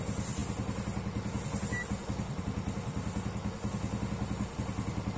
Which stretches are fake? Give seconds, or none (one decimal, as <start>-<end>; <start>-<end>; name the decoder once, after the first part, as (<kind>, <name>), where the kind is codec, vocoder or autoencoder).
none